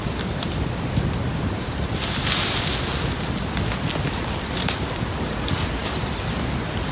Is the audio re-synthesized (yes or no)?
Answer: no